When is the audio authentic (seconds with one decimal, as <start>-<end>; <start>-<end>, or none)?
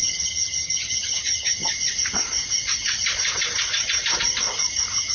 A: 1.6-5.1